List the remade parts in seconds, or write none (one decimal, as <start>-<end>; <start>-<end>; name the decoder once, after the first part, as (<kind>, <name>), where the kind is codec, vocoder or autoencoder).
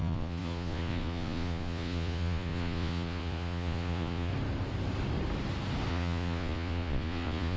0.0-4.3 (vocoder, Vocos); 5.9-7.6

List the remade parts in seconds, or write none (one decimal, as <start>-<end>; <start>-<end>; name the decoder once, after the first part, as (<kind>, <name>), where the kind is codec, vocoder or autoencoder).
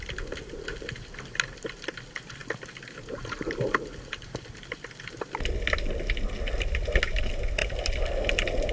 none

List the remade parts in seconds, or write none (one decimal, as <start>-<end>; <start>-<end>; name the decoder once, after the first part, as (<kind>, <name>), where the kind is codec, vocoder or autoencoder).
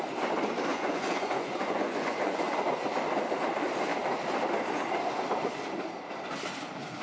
0.7-2.4 (vocoder, Vocos)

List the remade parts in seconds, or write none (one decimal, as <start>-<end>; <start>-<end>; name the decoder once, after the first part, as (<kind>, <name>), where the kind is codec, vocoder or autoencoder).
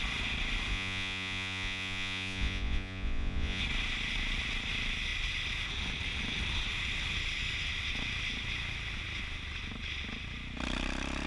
0.7-3.6 (vocoder, Vocos)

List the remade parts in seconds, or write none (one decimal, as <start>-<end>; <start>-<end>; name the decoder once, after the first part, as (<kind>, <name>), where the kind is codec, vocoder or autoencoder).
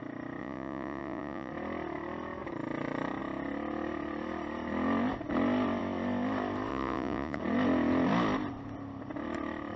0.4-1.5 (vocoder, Vocos); 6.7-7.4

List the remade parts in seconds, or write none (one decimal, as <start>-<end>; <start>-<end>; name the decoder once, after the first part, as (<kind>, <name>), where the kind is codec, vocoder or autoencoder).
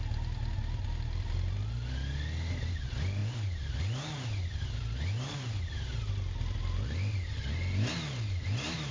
none